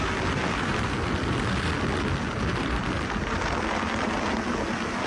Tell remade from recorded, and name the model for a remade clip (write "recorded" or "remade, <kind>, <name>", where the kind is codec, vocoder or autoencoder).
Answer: recorded